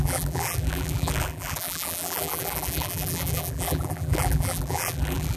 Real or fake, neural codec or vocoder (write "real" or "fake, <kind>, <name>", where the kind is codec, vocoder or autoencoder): fake, vocoder, BigVGAN v2